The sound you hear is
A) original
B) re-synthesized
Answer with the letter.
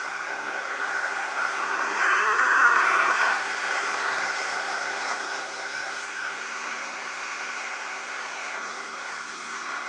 B